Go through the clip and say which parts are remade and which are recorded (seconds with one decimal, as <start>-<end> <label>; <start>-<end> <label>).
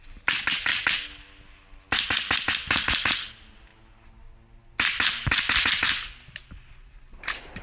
0.0-7.6 recorded